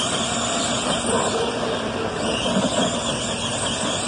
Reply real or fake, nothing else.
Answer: real